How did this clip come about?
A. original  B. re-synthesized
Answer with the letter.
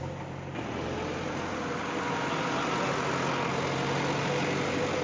A